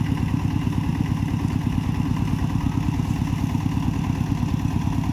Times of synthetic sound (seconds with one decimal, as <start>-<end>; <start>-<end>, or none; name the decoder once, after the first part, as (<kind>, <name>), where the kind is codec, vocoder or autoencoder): none